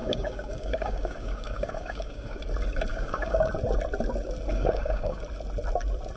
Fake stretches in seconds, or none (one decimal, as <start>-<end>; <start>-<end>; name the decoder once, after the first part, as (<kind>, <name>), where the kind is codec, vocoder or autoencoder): 0.0-2.4 (codec, DAC); 2.9-3.5; 4.5-5.2